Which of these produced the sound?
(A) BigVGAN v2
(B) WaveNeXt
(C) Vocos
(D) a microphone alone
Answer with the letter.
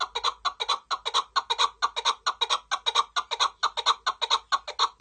D